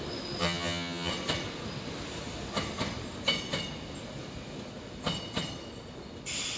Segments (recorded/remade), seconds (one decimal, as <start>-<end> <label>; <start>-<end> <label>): 0.0-0.4 recorded; 0.4-1.1 remade; 1.1-6.6 recorded